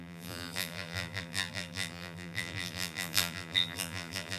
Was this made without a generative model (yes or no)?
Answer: no